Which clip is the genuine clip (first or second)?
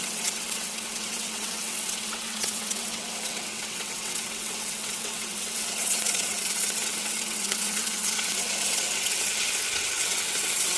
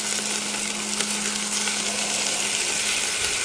second